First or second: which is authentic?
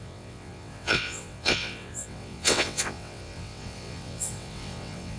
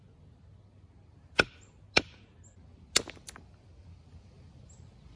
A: second